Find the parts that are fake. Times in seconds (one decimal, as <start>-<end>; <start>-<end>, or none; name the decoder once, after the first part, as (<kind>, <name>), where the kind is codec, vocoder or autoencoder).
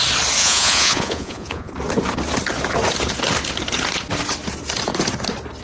0.4-1.7 (vocoder, Vocos)